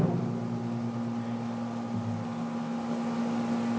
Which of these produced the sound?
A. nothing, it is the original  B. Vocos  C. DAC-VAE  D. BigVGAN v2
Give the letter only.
A